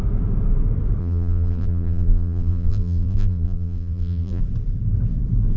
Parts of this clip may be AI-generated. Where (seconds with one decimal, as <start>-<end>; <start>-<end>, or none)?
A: 1.0-4.4